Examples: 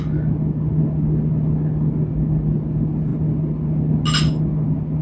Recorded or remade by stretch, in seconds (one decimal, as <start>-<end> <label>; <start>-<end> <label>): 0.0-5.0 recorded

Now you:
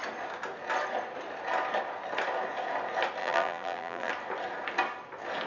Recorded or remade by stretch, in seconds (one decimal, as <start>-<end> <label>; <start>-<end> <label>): 0.0-3.2 recorded; 3.2-4.1 remade; 4.1-5.5 recorded

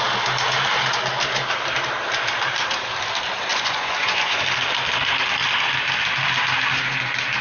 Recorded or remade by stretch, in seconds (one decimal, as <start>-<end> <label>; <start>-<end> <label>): 0.0-3.5 recorded; 3.5-4.4 remade; 4.4-7.4 recorded

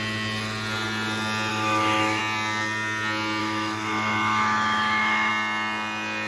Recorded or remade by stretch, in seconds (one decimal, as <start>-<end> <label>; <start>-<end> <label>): 0.0-1.5 recorded; 1.5-2.2 remade; 2.2-3.4 recorded; 3.4-5.3 remade; 5.3-6.3 recorded